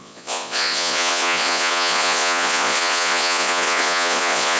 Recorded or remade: remade